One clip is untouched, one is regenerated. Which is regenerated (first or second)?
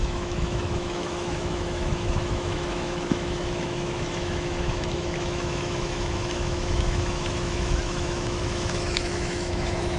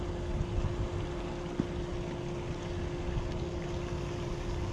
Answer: first